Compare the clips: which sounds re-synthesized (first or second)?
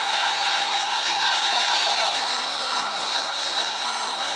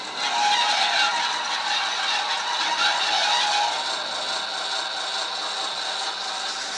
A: first